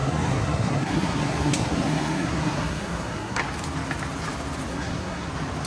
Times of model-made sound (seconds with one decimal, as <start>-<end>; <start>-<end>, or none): 0.0-3.4; 4.7-5.3